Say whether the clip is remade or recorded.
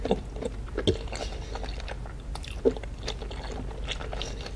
recorded